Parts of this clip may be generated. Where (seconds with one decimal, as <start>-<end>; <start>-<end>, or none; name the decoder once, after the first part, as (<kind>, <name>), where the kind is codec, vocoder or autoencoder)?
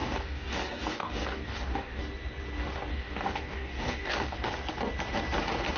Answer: 0.0-2.0 (codec, DAC); 2.9-4.5